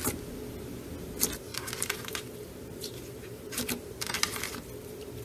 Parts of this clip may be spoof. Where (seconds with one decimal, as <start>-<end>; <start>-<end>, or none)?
1.5-4.5